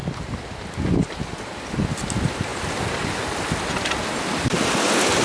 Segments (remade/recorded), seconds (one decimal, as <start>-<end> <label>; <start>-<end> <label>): 0.0-5.2 recorded